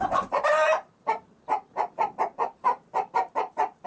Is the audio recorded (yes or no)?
no